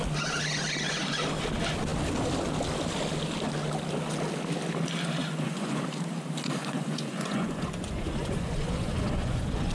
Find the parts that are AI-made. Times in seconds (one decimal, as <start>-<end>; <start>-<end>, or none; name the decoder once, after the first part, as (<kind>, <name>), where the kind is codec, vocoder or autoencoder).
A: 5.2-5.8 (vocoder, Vocos); 6.6-9.7